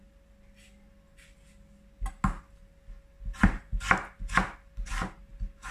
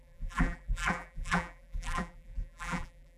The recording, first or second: first